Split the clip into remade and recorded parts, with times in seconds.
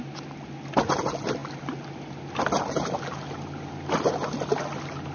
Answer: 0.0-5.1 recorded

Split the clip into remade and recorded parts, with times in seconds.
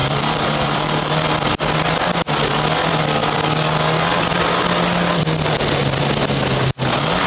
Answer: 0.0-1.1 remade; 1.1-7.3 recorded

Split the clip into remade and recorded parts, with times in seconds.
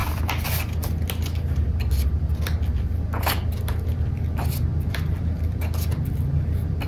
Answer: 0.0-4.7 recorded; 4.7-6.9 remade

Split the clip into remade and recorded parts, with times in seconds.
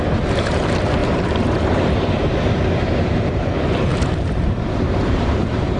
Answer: 0.0-5.8 remade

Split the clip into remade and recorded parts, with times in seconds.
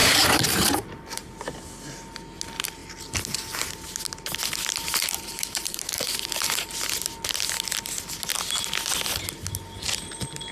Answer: 0.0-1.3 remade; 1.3-4.9 recorded; 4.9-6.7 remade; 6.7-10.5 recorded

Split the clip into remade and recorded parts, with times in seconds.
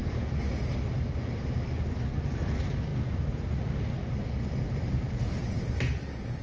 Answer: 0.0-2.1 recorded; 2.1-2.9 remade; 2.9-4.7 recorded; 4.7-6.4 remade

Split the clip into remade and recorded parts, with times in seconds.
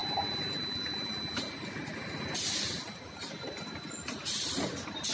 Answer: 0.0-5.1 recorded